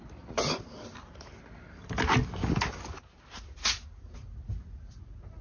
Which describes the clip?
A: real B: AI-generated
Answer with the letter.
A